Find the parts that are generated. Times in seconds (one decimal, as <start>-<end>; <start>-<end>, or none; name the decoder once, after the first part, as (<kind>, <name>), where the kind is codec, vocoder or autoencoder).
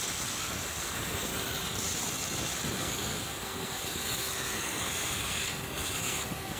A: 0.0-1.3 (codec, SNAC); 2.8-6.6